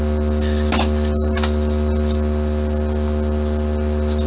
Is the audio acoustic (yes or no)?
yes